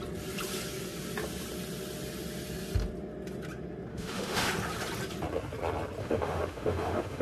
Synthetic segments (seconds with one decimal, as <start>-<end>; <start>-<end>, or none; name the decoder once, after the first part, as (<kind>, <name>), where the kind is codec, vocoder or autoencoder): 3.9-4.5 (autoencoder, DAC-VAE); 6.0-7.2